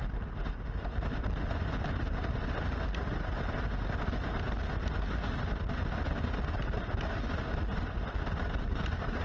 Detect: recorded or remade recorded